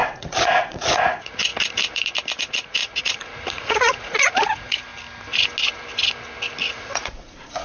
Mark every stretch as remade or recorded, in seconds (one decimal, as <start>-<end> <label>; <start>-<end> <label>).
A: 0.0-1.5 remade; 1.5-2.4 recorded; 2.4-4.9 remade; 4.9-6.7 recorded; 6.7-7.6 remade